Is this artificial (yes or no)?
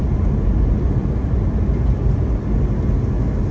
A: no